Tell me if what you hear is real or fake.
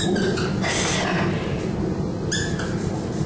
real